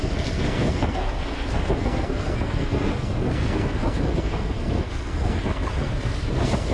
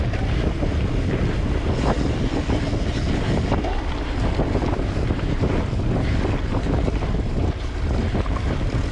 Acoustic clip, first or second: second